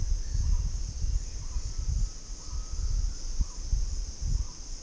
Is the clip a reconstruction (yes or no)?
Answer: no